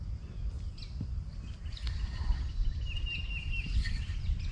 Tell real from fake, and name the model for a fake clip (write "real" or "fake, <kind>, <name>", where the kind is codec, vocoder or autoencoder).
real